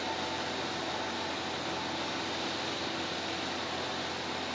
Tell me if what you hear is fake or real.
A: real